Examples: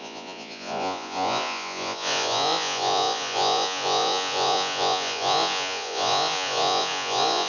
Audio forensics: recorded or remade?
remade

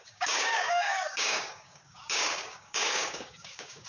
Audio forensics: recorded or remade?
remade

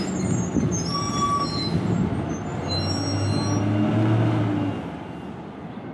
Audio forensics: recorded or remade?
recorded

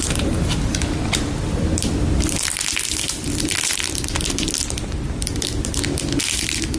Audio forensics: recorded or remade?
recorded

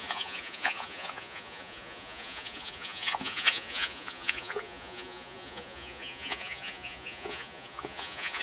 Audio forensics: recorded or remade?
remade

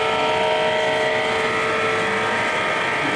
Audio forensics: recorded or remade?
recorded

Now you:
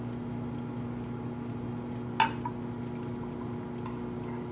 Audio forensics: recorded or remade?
recorded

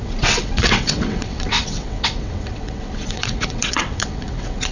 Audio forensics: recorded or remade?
remade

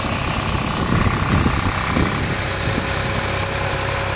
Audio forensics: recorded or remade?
recorded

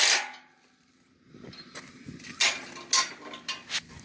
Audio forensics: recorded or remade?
recorded